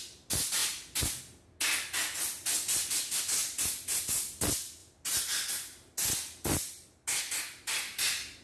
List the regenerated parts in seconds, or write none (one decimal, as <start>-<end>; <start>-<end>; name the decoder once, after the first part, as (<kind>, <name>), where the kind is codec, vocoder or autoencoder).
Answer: none